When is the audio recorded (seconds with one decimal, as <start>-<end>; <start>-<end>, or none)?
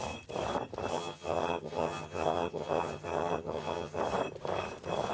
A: 0.0-0.9; 4.0-5.1